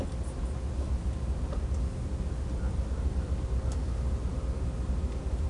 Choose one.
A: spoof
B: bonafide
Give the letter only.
B